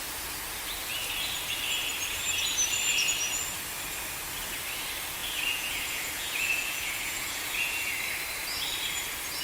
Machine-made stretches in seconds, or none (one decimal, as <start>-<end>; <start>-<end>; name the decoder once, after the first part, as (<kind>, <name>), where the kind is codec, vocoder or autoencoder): 5.2-7.9 (vocoder, Vocos)

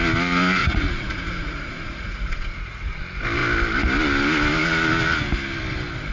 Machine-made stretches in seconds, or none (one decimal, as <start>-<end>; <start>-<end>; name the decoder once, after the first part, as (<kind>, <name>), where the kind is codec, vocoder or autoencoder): 0.6-3.0 (vocoder, Vocos)

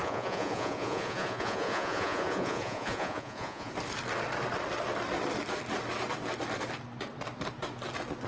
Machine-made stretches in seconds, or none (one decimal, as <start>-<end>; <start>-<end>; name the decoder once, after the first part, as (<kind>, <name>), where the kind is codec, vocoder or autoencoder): 0.0-3.7 (vocoder, Vocos)